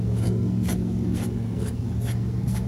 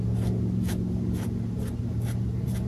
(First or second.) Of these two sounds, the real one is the second